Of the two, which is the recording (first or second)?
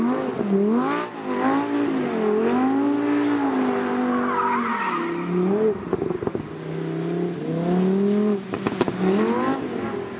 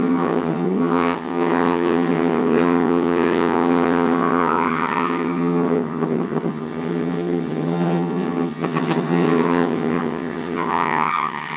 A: first